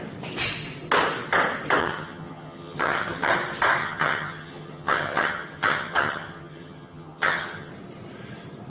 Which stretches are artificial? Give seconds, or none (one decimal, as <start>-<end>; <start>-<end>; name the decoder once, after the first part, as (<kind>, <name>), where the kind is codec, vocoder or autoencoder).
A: 1.8-3.3 (vocoder, HiFi-GAN); 3.8-7.7